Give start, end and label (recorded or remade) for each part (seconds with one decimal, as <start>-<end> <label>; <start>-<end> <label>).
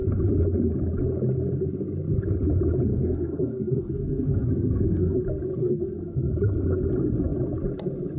0.0-2.9 recorded; 2.9-5.1 remade; 5.1-5.6 recorded; 5.6-6.3 remade; 6.3-8.2 recorded